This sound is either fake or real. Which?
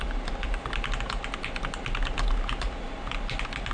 real